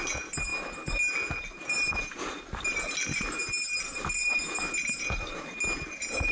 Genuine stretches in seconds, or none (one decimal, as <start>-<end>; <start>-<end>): 0.0-6.3